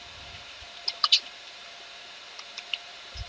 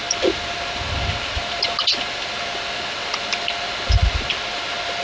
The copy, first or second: first